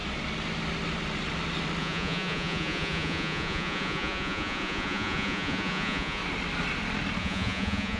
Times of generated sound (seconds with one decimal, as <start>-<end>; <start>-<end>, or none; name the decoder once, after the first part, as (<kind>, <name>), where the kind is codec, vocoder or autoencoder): 1.8-6.2 (vocoder, Vocos); 7.2-8.0